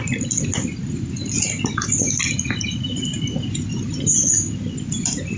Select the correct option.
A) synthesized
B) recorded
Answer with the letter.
B